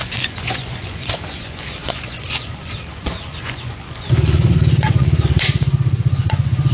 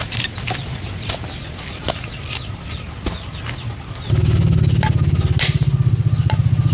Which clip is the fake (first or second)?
first